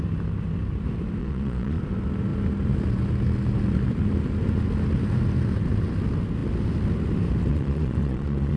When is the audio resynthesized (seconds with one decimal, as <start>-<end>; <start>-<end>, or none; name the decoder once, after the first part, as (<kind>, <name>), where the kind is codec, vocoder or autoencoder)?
1.2-1.8 (vocoder, Vocos); 7.5-8.6